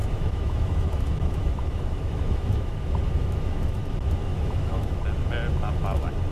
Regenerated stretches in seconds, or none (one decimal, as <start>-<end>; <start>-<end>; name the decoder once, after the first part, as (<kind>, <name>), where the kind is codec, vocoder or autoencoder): 0.0-3.8 (autoencoder, DAC-VAE); 4.3-5.0